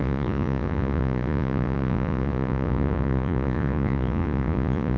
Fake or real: fake